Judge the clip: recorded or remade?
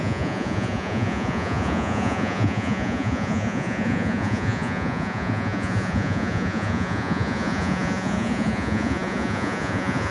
remade